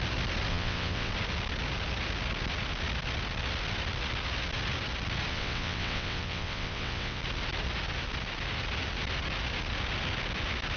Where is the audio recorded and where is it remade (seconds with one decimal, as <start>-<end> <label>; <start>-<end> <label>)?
0.0-0.5 recorded; 0.5-1.1 remade; 1.1-5.3 recorded; 5.3-7.2 remade; 7.2-10.8 recorded